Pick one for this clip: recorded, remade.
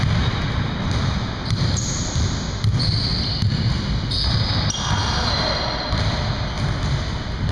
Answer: recorded